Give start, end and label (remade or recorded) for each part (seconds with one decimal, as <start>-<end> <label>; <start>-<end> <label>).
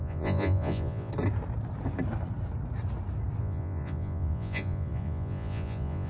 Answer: 0.0-1.1 remade; 1.1-3.4 recorded; 3.4-6.1 remade